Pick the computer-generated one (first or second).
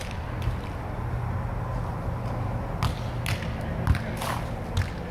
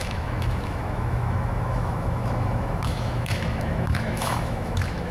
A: second